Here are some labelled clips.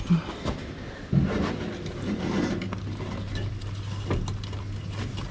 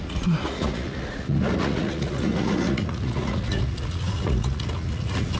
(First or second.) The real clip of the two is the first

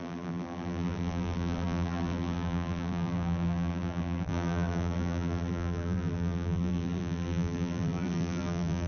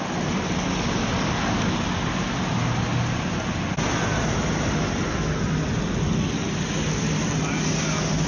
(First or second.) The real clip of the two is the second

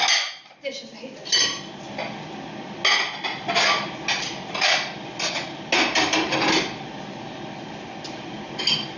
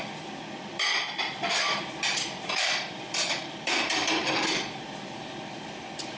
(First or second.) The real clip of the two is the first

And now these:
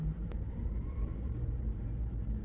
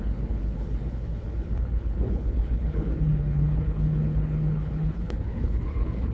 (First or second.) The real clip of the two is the first